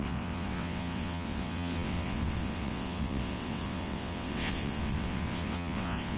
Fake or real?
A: fake